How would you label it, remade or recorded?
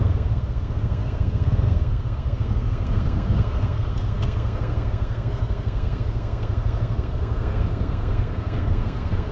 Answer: remade